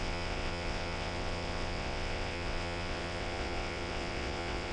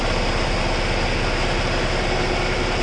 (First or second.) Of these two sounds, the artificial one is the first